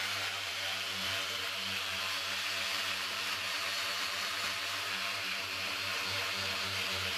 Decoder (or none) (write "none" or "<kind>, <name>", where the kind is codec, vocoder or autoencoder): vocoder, BigVGAN v2